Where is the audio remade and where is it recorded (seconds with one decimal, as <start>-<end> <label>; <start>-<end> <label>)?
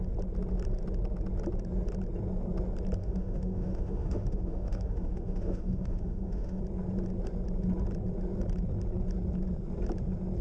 0.0-3.0 recorded; 3.0-6.6 remade; 6.6-10.4 recorded